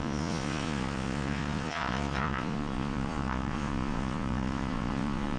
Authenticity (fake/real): fake